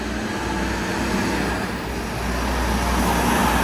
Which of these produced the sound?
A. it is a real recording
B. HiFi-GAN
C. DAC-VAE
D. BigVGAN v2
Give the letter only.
A